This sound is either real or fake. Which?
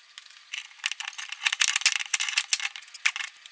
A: real